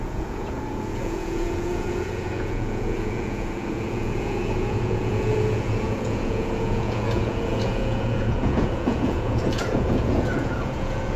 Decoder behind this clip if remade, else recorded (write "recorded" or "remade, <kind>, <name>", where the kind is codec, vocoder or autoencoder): remade, vocoder, Vocos